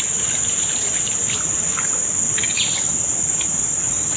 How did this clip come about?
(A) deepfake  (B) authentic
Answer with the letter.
B